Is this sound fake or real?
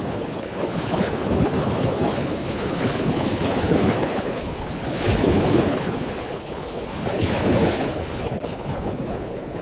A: fake